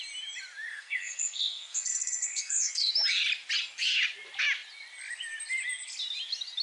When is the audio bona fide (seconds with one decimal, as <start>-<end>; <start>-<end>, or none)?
0.0-0.7; 2.9-6.6